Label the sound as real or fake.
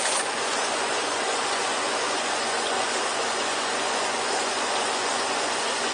fake